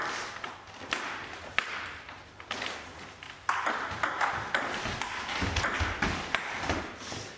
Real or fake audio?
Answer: fake